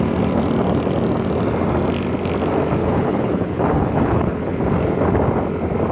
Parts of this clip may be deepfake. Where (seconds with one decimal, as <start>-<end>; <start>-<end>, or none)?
2.8-4.6